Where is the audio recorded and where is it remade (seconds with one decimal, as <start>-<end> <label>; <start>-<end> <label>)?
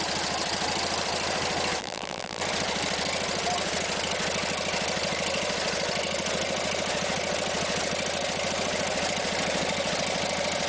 0.0-1.8 recorded; 1.8-2.4 remade; 2.4-10.7 recorded